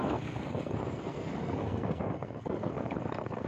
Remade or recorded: remade